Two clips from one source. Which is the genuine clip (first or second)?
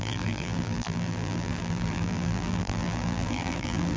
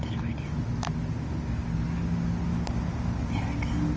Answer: second